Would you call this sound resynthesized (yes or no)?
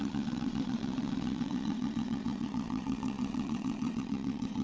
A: yes